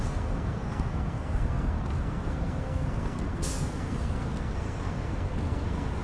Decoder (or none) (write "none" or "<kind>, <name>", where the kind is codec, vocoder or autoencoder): codec, SNAC